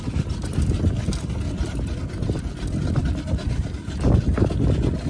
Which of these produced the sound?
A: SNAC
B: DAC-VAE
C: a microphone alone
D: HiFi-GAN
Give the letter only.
C